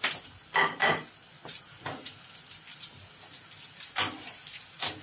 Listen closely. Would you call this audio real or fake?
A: real